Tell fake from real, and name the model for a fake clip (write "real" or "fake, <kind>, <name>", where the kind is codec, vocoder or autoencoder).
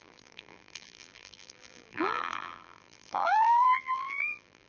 fake, vocoder, BigVGAN v2